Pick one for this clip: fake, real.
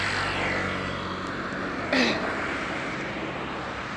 real